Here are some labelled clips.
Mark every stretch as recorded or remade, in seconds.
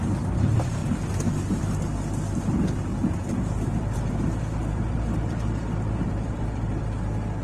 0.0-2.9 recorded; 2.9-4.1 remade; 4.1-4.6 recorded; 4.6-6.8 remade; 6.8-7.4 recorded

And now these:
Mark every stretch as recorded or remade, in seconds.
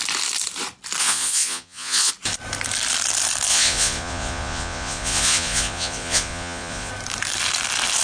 0.0-1.0 recorded; 1.0-2.1 remade; 2.1-3.5 recorded; 3.5-6.9 remade; 6.9-8.0 recorded